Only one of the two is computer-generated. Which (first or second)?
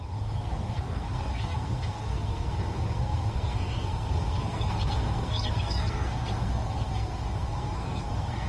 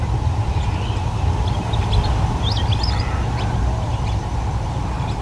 first